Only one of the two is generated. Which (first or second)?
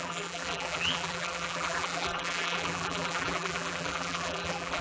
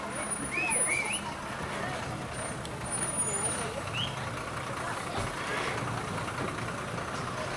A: first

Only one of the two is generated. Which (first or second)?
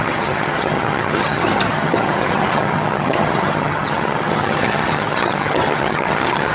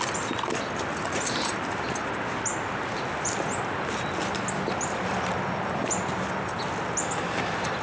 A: first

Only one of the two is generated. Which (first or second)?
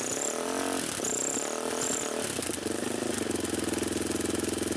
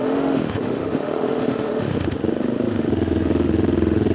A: second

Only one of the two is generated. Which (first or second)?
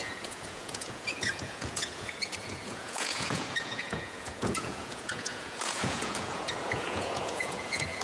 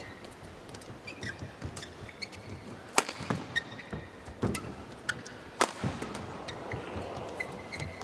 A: first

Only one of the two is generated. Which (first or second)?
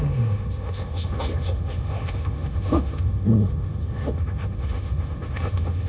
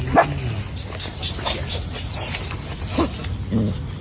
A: first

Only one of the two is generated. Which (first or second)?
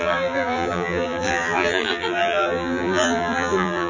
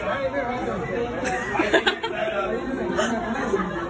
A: first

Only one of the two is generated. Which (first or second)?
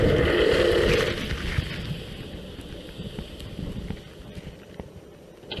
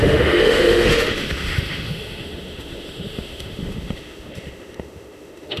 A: second